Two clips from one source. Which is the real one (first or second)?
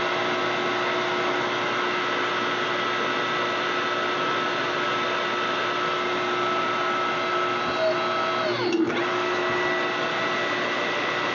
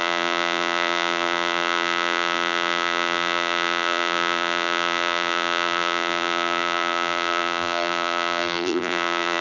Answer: first